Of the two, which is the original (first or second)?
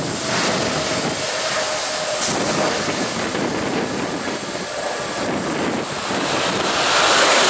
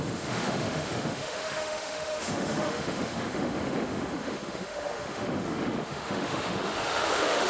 first